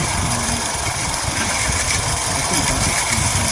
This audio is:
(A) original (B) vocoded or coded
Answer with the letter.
A